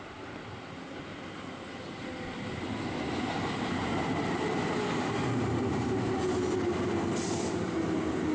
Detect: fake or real real